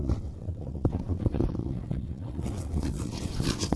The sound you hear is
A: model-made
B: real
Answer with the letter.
A